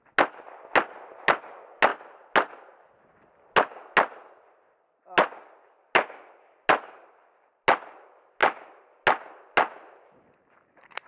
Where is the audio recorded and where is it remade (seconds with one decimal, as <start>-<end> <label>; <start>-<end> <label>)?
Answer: 0.0-11.1 recorded